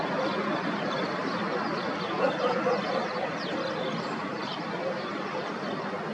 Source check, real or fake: real